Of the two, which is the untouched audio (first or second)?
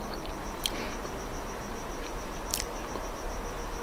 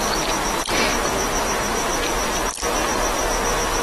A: second